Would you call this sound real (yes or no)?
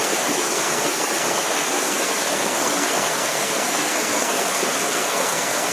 no